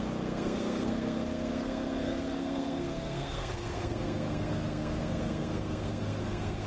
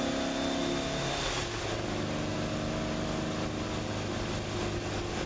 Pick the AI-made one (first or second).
first